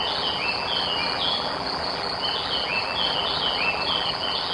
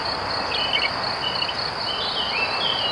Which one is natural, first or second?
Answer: second